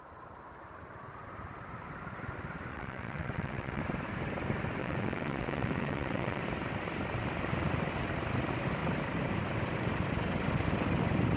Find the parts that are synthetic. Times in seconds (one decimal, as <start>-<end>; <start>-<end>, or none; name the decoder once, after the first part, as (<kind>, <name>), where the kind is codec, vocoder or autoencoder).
2.7-3.8 (vocoder, WaveNeXt); 4.8-6.4